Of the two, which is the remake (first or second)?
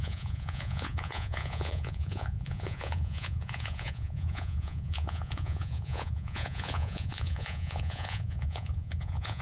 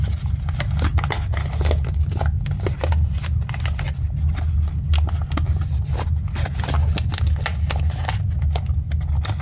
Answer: first